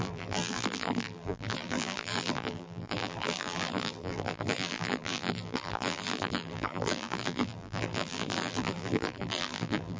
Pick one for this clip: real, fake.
fake